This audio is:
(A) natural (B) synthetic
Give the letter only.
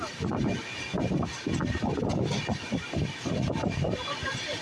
A